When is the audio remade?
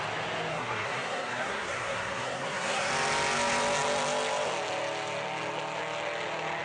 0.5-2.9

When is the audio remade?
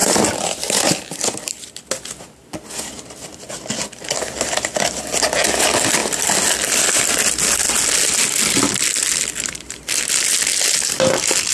none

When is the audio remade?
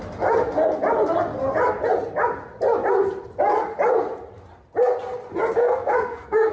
5.6-6.5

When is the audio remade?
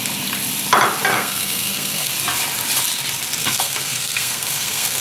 1.1-2.1; 3.4-5.0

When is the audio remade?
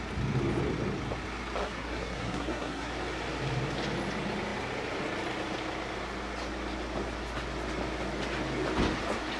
1.6-2.9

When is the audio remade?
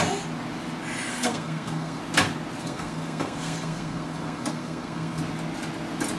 1.1-2.0; 2.6-5.2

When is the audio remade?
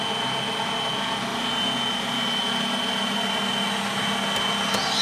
none